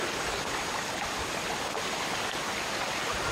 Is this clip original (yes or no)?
yes